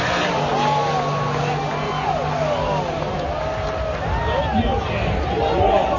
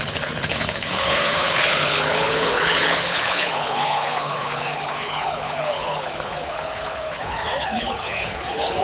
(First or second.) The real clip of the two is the first